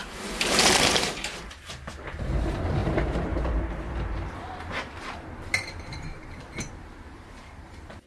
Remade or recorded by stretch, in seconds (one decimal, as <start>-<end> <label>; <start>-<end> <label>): 0.0-8.1 remade